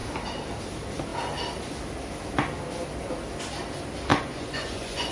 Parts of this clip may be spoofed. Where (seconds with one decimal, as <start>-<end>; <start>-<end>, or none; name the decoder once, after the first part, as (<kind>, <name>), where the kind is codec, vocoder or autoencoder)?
4.1-5.1 (vocoder, Vocos)